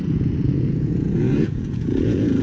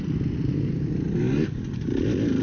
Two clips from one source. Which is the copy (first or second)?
first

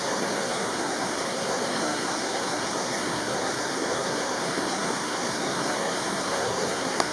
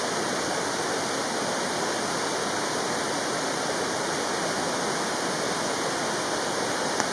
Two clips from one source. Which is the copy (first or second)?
first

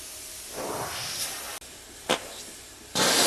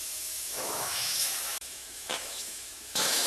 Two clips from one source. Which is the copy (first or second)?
second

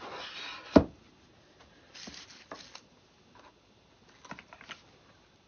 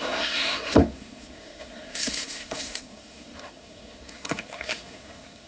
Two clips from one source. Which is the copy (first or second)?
second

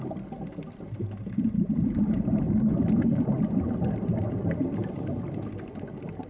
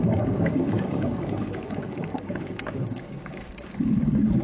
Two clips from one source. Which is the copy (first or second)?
second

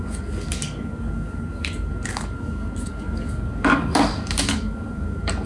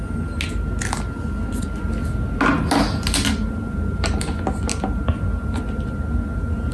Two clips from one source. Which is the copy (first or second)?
first